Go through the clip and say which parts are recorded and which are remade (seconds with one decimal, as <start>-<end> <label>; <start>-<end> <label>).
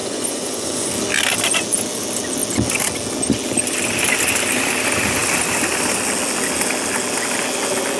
0.0-0.9 remade; 0.9-8.0 recorded